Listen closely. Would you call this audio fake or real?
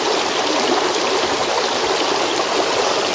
real